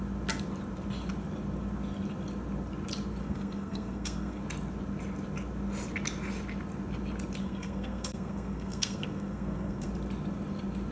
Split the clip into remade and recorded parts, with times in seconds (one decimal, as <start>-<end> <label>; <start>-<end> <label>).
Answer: 0.0-3.2 recorded; 3.2-4.4 remade; 4.4-7.4 recorded; 7.4-9.9 remade; 9.9-10.9 recorded